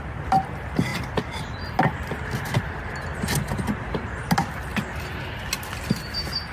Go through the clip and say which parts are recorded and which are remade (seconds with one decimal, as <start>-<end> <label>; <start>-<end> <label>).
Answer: 0.0-6.5 recorded